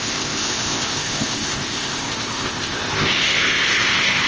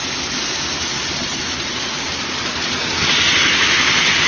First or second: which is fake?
first